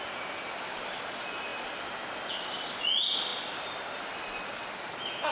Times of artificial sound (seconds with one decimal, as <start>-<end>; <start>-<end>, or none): none

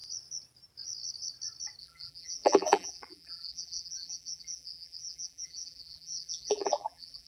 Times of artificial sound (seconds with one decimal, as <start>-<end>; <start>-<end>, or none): 1.8-7.3

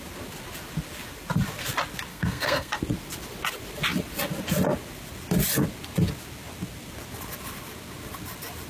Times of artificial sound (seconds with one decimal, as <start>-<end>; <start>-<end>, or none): 2.1-2.8

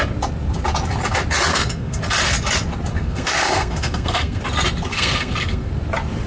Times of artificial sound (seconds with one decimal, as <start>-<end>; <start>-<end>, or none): 1.5-2.0; 2.9-4.4; 4.9-5.7

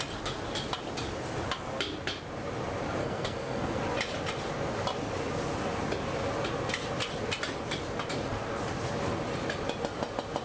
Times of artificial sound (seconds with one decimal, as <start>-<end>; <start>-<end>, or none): 3.0-3.8

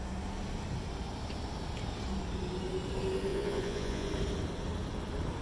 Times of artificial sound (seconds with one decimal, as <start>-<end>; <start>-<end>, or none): 3.3-4.1

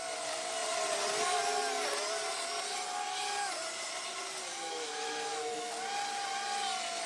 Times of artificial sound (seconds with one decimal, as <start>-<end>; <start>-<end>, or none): 4.5-5.7